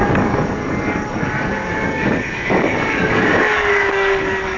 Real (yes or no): no